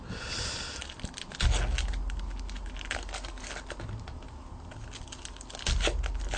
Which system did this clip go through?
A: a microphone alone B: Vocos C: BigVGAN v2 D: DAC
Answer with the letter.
A